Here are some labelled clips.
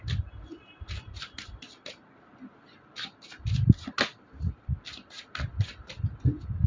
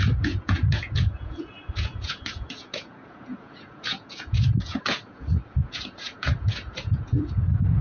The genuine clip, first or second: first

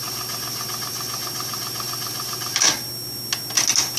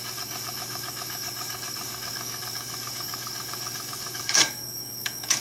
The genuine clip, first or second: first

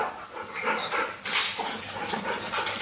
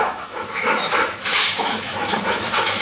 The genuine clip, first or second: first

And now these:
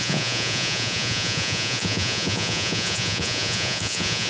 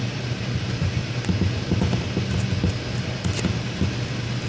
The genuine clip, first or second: second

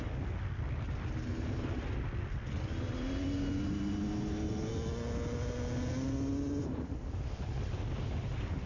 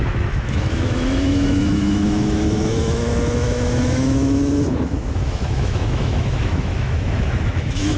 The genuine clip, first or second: first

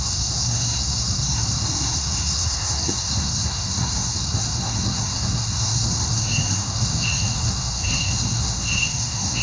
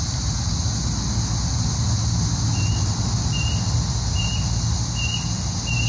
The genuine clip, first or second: second